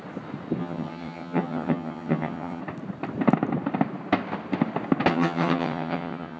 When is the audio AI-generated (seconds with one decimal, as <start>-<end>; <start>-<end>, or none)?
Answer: 0.6-2.6; 5.1-6.4